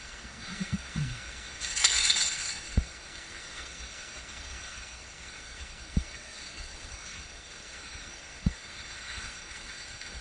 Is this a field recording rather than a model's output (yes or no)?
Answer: no